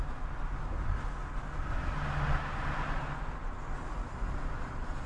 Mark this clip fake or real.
real